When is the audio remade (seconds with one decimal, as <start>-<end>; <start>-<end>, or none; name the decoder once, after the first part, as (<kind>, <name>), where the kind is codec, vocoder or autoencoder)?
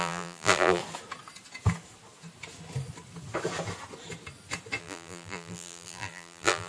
0.0-0.8 (vocoder, BigVGAN v2); 4.8-6.7